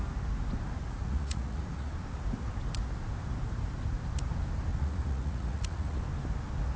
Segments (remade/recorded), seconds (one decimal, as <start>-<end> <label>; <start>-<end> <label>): 0.0-0.8 recorded; 0.8-1.9 remade; 1.9-4.7 recorded; 4.7-6.0 remade; 6.0-6.8 recorded